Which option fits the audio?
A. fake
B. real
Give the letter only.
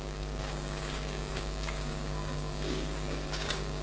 A